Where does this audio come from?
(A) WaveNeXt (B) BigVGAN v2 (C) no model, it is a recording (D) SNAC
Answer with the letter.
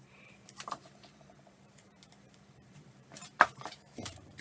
B